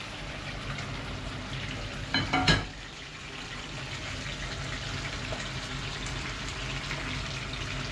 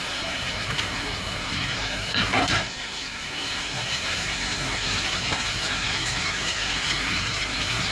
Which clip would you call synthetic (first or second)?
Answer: second